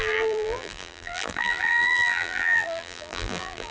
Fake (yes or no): yes